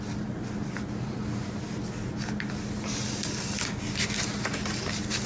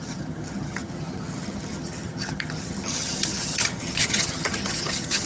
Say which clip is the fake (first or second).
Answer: second